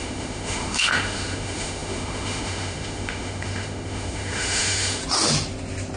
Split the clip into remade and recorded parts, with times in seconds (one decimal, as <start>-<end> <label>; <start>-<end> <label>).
0.0-5.0 remade; 5.0-6.0 recorded